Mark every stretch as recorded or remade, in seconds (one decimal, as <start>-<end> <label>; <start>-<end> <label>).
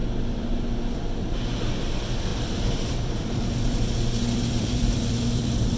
0.0-0.5 remade; 0.5-2.3 recorded; 2.3-5.8 remade